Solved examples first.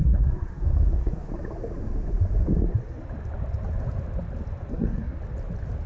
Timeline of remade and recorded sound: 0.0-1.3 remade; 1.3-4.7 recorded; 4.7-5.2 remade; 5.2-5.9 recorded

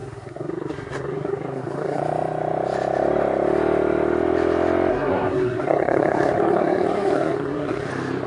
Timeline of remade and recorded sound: 0.0-2.0 remade; 2.0-4.9 recorded; 4.9-7.9 remade; 7.9-8.3 recorded

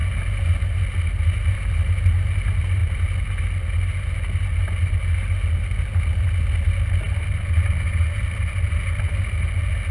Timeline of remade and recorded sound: 0.0-9.9 recorded